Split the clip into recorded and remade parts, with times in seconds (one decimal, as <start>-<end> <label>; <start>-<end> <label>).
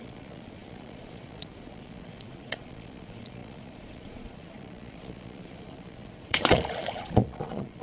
0.0-7.8 remade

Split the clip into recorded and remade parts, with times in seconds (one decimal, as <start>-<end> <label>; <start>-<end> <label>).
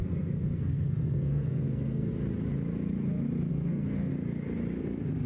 0.0-2.1 remade; 2.1-3.5 recorded; 3.5-4.1 remade; 4.1-5.3 recorded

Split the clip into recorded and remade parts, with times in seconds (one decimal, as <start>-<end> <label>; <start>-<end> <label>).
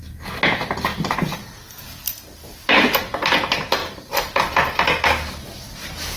0.0-0.9 recorded; 0.9-2.3 remade; 2.3-3.8 recorded; 3.8-4.4 remade; 4.4-6.2 recorded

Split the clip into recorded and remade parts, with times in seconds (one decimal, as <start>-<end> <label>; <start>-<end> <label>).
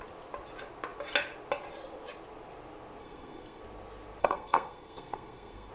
0.0-3.0 recorded; 3.0-3.6 remade; 3.6-4.2 recorded; 4.2-5.7 remade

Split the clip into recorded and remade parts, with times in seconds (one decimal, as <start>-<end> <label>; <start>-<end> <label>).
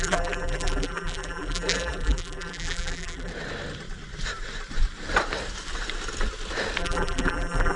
0.0-3.3 remade; 3.3-6.8 recorded; 6.8-7.8 remade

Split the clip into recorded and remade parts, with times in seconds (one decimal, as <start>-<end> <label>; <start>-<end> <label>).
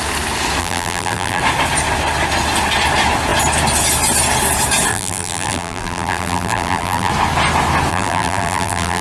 0.0-0.6 recorded; 0.6-1.4 remade; 1.4-4.9 recorded; 4.9-7.1 remade; 7.1-7.9 recorded; 7.9-9.0 remade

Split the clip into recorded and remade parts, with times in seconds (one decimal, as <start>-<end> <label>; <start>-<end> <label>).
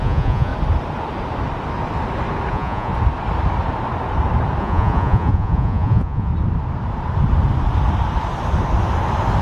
0.0-0.5 remade; 0.5-2.5 recorded; 2.5-2.9 remade; 2.9-4.6 recorded; 4.6-6.3 remade; 6.3-9.4 recorded